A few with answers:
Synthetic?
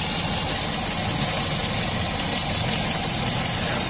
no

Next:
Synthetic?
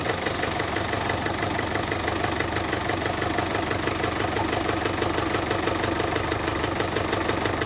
no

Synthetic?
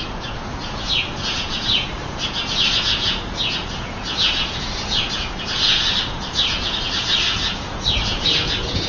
yes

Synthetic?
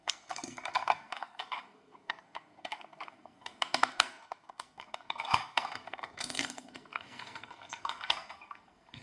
yes